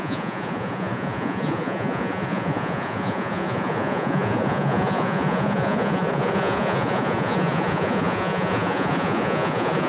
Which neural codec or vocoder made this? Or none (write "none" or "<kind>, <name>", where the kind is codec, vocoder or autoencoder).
vocoder, Vocos